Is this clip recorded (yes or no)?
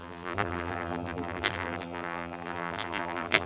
no